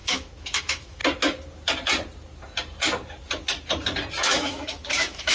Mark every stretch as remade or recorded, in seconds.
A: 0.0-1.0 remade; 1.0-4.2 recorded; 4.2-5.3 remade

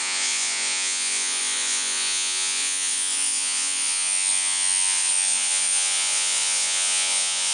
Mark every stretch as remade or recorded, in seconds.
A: 0.0-7.5 remade

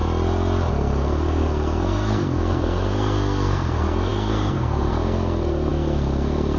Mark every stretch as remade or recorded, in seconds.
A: 0.0-0.7 recorded; 0.7-6.6 remade

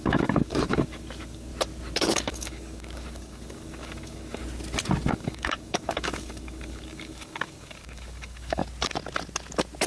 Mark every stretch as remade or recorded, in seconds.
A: 0.0-1.5 remade; 1.5-2.0 recorded; 2.0-4.4 remade; 4.4-5.1 recorded; 5.1-8.6 remade; 8.6-9.9 recorded

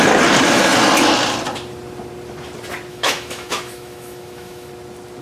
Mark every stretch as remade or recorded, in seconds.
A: 0.0-2.9 recorded; 2.9-4.7 remade; 4.7-5.2 recorded

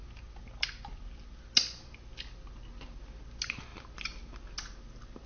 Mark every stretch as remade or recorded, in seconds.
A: 0.0-5.3 recorded

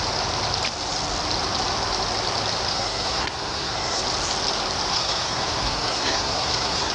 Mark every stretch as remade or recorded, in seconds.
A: 0.0-2.7 recorded; 2.7-4.0 remade; 4.0-4.9 recorded; 4.9-6.9 remade